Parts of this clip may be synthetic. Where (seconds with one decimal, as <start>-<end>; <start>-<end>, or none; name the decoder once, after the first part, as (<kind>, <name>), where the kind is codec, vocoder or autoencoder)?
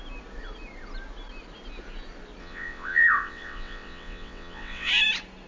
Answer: 2.4-4.9 (vocoder, WaveNeXt)